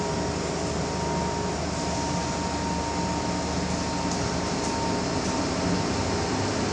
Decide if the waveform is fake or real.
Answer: real